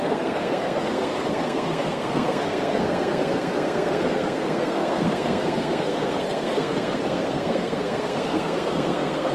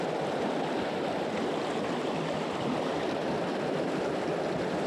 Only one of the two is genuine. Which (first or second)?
second